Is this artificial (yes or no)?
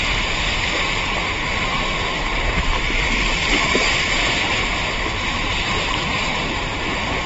yes